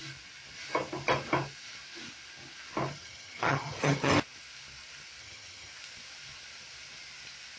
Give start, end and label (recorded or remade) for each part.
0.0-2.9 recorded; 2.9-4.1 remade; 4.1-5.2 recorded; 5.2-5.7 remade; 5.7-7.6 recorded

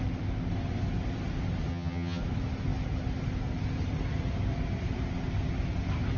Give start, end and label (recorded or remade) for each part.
0.0-1.7 recorded; 1.7-2.2 remade; 2.2-6.2 recorded

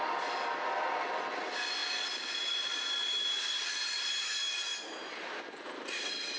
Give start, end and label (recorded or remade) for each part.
0.0-6.4 recorded

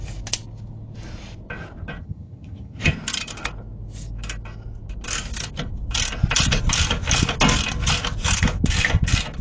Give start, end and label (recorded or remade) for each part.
0.0-2.0 recorded; 2.0-2.9 remade; 2.9-9.4 recorded

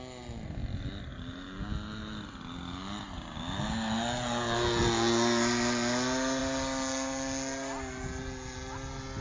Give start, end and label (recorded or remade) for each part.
0.0-9.2 recorded

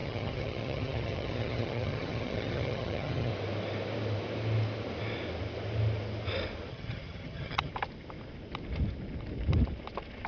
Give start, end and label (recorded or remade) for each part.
0.0-3.3 remade; 3.3-6.7 recorded; 6.7-7.7 remade; 7.7-10.3 recorded

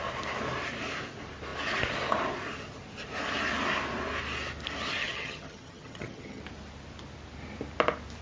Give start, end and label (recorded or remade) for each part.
0.0-5.0 recorded; 5.0-6.4 remade; 6.4-8.2 recorded